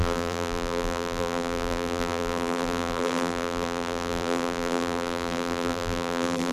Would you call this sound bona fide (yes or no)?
no